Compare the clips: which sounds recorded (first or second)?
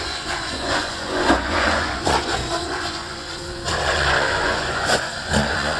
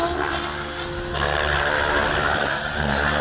second